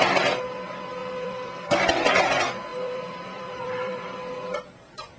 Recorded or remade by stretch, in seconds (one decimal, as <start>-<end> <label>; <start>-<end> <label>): 0.0-1.0 recorded; 1.0-1.9 remade; 1.9-2.7 recorded; 2.7-3.9 remade; 3.9-5.2 recorded